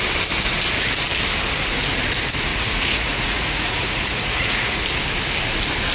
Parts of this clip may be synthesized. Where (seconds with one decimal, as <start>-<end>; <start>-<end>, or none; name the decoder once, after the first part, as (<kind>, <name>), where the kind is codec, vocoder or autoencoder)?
2.5-4.8 (vocoder, Vocos)

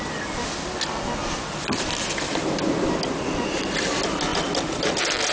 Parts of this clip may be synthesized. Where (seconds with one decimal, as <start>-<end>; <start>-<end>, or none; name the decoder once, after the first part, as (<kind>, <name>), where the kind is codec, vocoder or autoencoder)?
none

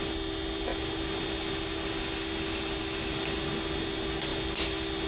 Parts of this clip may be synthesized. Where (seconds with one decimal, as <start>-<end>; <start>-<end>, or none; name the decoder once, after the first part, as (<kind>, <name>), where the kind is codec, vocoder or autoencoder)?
none

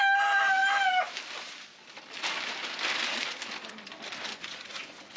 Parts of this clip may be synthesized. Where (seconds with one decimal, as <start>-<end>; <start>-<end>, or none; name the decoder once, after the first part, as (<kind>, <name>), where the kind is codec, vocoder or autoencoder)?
4.3-5.2 (vocoder, Vocos)

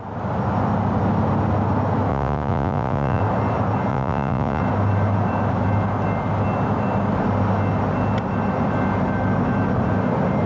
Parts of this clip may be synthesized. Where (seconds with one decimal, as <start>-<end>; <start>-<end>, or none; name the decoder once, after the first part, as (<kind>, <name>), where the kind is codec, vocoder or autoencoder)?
2.1-3.2 (vocoder, Vocos); 3.9-4.6

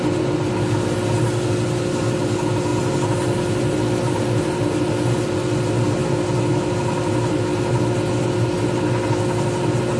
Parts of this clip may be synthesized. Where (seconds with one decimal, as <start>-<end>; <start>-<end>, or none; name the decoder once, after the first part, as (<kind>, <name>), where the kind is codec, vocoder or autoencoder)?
none

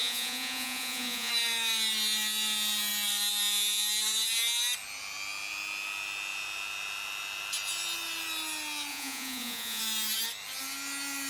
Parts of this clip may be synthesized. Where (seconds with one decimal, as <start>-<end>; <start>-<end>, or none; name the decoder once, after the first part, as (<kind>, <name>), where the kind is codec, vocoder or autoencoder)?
0.0-1.3 (vocoder, Vocos); 8.9-9.8

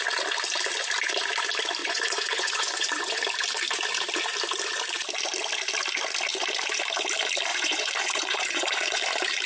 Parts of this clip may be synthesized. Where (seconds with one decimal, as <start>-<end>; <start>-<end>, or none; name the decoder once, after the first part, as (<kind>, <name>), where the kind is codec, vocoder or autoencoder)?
1.8-3.2 (vocoder, Vocos); 7.5-9.0